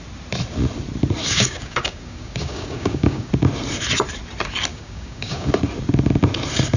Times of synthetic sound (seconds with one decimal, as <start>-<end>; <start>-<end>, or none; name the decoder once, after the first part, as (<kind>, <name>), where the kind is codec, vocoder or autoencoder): 1.2-3.3 (codec, DAC); 4.7-5.5